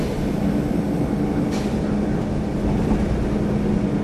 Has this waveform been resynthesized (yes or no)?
no